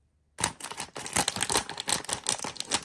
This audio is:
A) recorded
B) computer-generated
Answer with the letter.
A